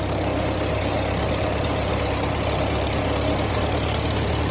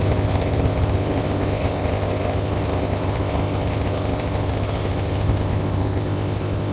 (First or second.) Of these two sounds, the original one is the first